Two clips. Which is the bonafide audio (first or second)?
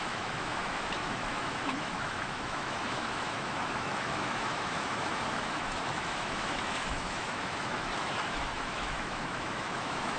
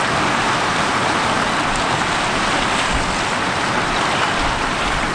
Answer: second